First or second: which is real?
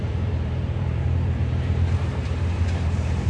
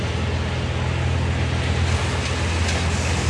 second